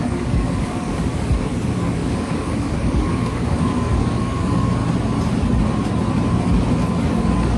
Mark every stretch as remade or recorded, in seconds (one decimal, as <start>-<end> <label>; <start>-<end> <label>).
0.0-4.8 remade; 4.8-7.0 recorded; 7.0-7.6 remade